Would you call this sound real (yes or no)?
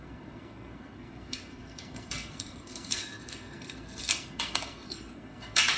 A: no